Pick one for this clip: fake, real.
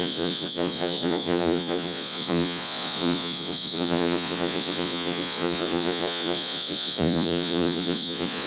fake